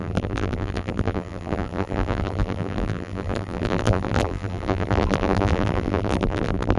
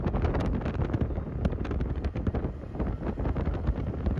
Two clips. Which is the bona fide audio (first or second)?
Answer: second